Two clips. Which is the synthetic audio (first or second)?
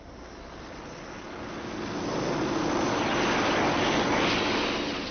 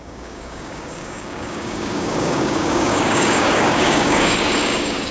second